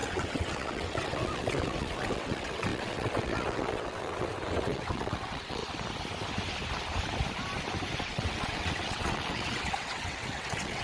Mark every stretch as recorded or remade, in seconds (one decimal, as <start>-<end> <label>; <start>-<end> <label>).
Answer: 0.0-5.6 remade; 5.6-8.0 recorded; 8.0-10.8 remade